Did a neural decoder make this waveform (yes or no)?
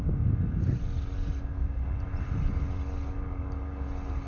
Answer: no